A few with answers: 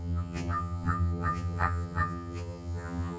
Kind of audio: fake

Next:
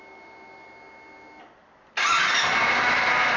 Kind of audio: real